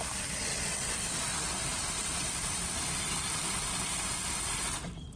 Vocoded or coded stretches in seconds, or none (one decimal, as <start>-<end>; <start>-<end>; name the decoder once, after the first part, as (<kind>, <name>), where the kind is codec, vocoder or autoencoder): none